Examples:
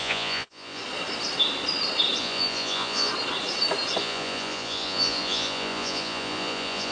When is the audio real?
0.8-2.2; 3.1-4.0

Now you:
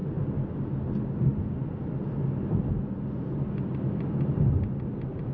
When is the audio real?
0.0-5.3

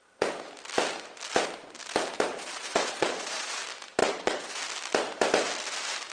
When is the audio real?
0.0-2.3; 3.6-4.0; 4.6-6.1

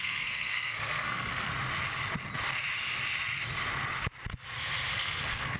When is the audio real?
1.5-4.9

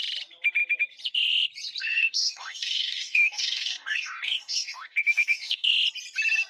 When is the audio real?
0.0-1.8; 5.7-6.5

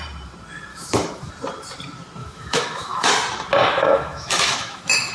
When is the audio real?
0.0-0.7; 1.3-2.2; 3.1-3.6

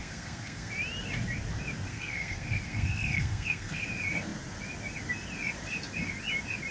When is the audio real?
0.7-1.9; 3.8-6.7